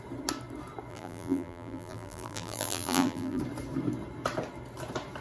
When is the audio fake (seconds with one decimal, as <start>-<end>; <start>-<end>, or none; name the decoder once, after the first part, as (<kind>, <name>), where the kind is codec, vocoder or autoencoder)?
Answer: 0.9-3.4 (vocoder, BigVGAN v2)